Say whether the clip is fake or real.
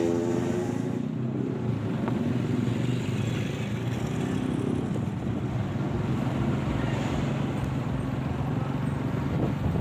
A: real